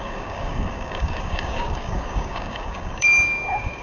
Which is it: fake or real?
fake